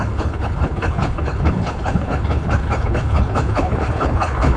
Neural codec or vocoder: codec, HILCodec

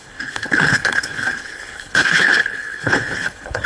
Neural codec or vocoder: codec, HILCodec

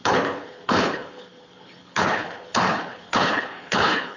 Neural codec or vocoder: codec, HILCodec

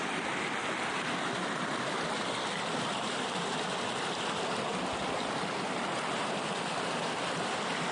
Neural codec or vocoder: none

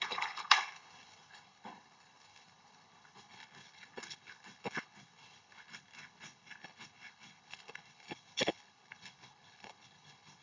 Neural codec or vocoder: codec, HILCodec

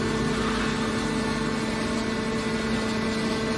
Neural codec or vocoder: none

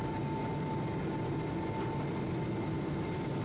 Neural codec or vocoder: none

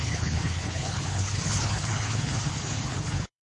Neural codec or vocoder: codec, HILCodec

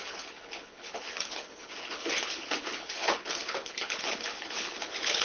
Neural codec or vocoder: codec, HILCodec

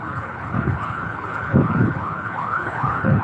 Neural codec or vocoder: codec, HILCodec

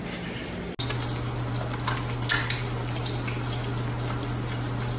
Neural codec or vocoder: none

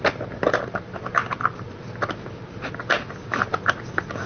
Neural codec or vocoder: none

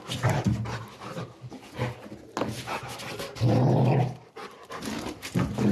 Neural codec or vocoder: none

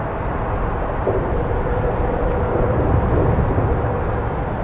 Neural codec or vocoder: none